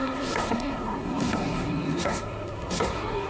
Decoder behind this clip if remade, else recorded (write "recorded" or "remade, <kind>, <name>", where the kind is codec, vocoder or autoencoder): remade, codec, SNAC